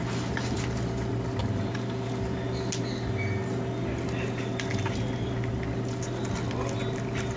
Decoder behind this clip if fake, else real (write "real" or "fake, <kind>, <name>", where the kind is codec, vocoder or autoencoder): real